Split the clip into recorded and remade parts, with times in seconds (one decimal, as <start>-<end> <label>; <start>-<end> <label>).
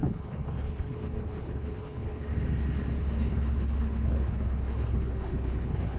0.0-2.3 remade; 2.3-3.2 recorded; 3.2-6.0 remade